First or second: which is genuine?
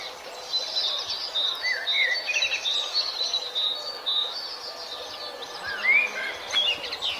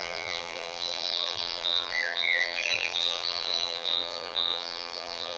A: first